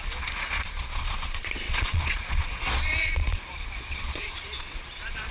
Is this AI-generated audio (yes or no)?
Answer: yes